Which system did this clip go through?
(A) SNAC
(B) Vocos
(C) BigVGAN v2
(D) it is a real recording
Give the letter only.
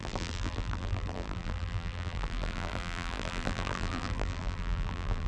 C